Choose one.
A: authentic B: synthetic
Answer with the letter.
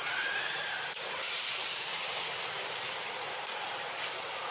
B